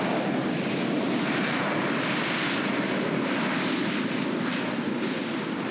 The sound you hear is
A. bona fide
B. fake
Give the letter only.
A